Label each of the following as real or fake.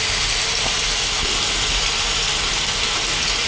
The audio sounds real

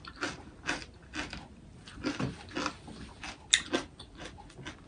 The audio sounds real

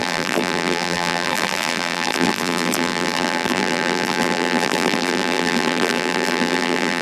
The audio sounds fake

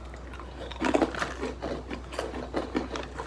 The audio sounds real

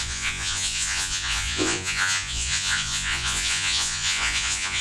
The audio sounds fake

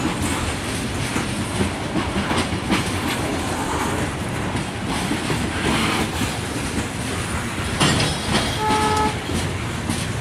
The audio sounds real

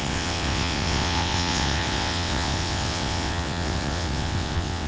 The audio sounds fake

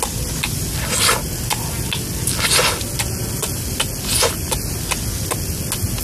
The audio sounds real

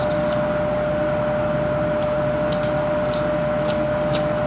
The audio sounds real